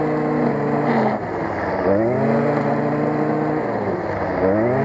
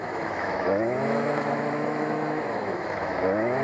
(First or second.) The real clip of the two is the first